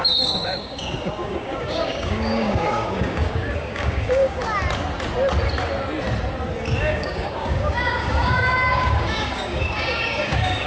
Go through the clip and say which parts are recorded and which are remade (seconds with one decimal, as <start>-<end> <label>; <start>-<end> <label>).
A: 0.0-4.4 remade; 4.4-6.8 recorded; 6.8-10.7 remade

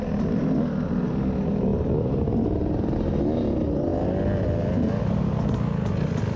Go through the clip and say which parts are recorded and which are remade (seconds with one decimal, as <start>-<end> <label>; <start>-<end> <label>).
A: 0.0-6.4 recorded